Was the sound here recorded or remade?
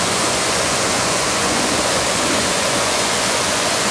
remade